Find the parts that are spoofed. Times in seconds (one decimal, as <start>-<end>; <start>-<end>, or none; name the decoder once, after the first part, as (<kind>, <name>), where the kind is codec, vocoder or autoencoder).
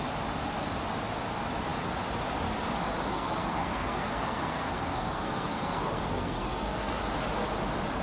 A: 3.1-7.0 (codec, SNAC)